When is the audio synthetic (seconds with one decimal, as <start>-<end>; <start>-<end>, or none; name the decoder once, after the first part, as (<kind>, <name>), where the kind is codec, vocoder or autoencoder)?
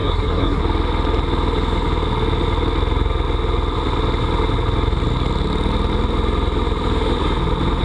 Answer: 0.0-0.6 (codec, SNAC)